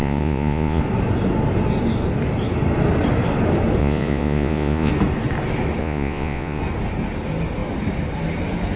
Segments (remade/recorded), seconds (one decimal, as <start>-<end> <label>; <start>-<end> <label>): 0.0-0.8 remade; 0.8-3.8 recorded; 3.8-4.9 remade; 4.9-5.8 recorded; 5.8-6.6 remade; 6.6-8.8 recorded